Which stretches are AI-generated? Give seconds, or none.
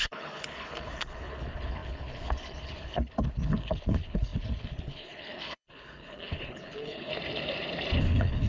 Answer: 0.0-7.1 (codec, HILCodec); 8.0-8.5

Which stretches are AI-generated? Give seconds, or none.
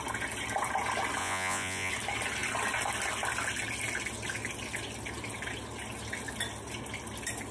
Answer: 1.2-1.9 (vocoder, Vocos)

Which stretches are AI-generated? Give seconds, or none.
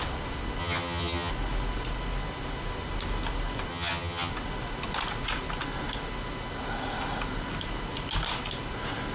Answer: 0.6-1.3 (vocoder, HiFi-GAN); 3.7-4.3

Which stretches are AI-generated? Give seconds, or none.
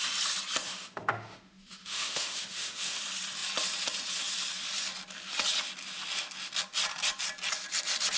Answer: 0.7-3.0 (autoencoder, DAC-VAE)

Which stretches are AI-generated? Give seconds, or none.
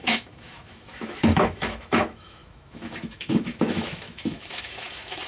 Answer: 0.0-5.3 (autoencoder, DAC-VAE)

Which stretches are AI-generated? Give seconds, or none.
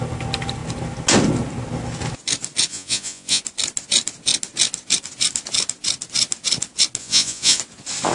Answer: 2.7-3.4 (vocoder, Vocos); 7.0-7.6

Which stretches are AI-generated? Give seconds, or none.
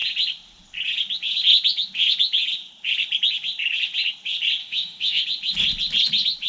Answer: 4.6-5.2 (autoencoder, DAC-VAE)